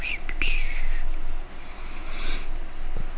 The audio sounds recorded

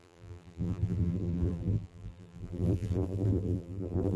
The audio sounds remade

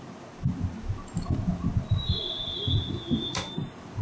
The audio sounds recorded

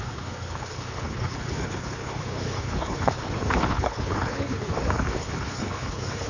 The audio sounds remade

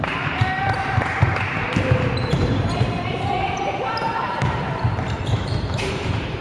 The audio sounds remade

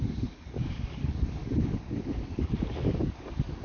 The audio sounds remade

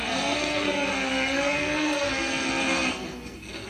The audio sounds remade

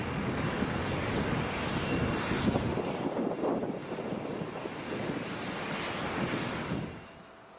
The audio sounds recorded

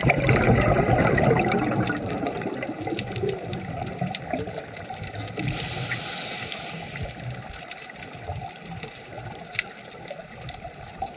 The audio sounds remade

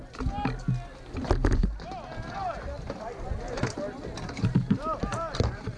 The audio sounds recorded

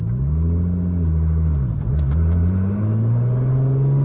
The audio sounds recorded